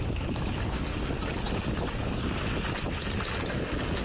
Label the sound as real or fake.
real